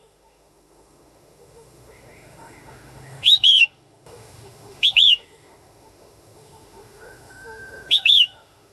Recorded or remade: remade